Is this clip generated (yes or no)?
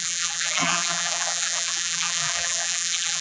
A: yes